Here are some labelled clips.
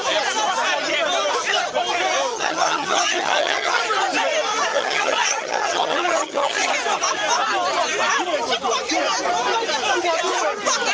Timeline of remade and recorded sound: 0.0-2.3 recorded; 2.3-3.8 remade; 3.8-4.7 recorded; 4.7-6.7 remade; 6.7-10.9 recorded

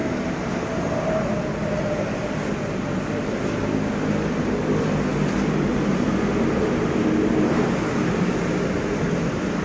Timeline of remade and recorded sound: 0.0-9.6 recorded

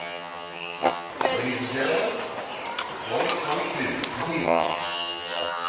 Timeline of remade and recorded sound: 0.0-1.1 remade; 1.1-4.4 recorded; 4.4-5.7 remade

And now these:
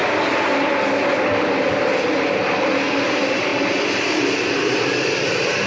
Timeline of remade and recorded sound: 0.0-5.7 recorded